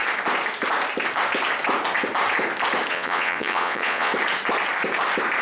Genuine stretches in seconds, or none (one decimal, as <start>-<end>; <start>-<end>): 0.0-2.9; 4.1-5.4